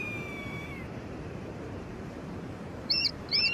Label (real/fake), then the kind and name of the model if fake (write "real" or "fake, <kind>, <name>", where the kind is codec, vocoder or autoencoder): fake, vocoder, BigVGAN v2